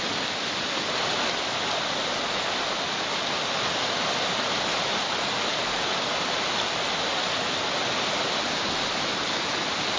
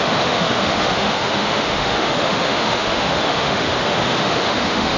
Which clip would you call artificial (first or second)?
second